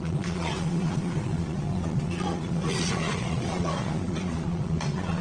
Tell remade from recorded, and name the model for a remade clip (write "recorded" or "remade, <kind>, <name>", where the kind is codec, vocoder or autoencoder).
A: remade, vocoder, Vocos